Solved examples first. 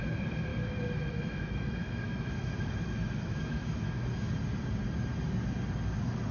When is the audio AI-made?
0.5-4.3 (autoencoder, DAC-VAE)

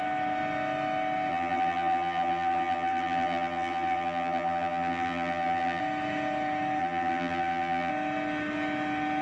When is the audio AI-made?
1.3-5.8 (vocoder, BigVGAN v2); 6.8-7.9

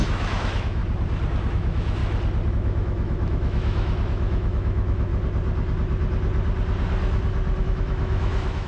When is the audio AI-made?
0.0-0.8 (autoencoder, DAC-VAE); 1.5-2.0; 2.5-5.1; 7.6-8.7

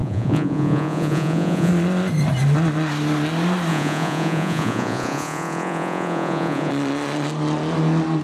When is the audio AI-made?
0.0-1.7 (vocoder, Vocos); 3.7-6.7

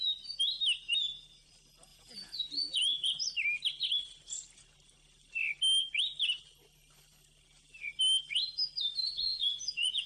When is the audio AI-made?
1.9-3.1 (vocoder, Vocos); 9.3-10.1

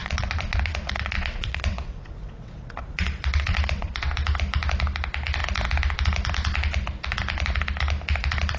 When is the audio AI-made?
0.0-4.0 (vocoder, WaveNeXt)

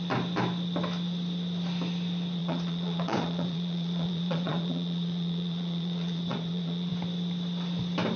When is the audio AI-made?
2.4-6.9 (vocoder, Vocos)